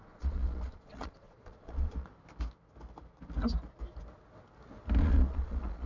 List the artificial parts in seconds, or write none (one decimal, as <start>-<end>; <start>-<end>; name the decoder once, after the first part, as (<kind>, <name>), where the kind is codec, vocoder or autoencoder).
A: 0.0-2.1 (vocoder, Vocos); 5.0-5.9